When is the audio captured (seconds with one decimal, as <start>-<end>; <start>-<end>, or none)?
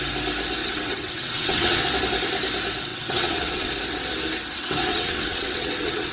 0.0-0.6; 1.8-2.9; 3.7-4.9